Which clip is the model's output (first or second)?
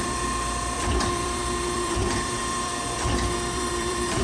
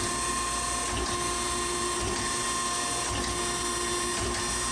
first